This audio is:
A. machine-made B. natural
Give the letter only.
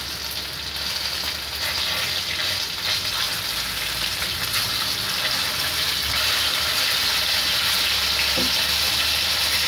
B